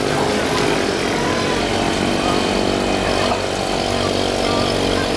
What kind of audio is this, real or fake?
real